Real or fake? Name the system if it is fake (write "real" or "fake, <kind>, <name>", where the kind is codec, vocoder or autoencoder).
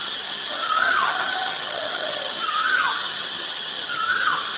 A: fake, vocoder, HiFi-GAN